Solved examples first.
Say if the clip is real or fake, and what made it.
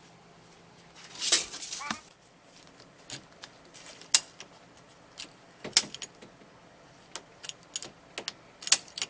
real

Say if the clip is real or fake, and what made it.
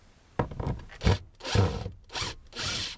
real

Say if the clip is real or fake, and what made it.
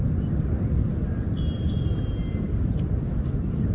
real